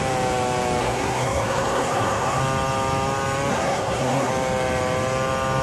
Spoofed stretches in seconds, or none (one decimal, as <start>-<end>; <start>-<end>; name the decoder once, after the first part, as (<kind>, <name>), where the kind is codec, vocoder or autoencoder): 0.8-2.4 (codec, SNAC); 3.5-4.3